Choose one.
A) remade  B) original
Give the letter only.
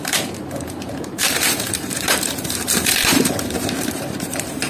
A